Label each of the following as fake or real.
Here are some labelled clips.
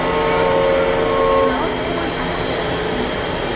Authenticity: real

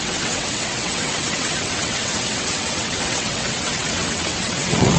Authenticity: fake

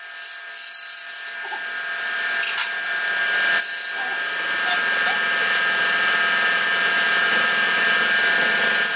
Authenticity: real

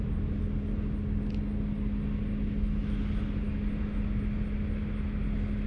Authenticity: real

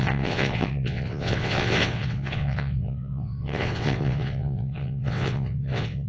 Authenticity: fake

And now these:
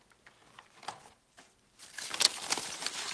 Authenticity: real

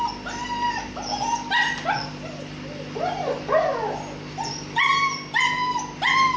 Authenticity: real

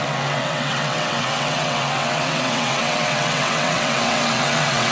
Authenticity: fake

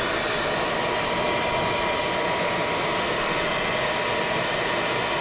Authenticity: real